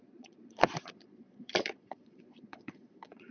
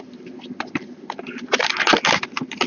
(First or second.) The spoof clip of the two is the first